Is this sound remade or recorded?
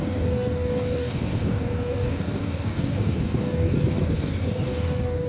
remade